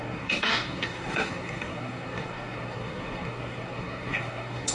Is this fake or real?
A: fake